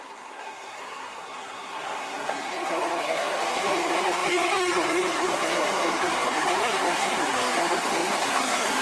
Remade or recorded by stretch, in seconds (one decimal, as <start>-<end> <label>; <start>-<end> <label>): 0.0-8.8 remade